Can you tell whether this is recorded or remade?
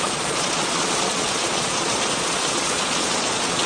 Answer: remade